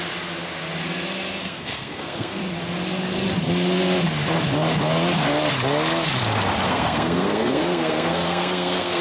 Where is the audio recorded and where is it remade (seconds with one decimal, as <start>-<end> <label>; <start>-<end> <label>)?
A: 0.0-1.4 recorded; 1.4-2.4 remade; 2.4-6.7 recorded; 6.7-9.0 remade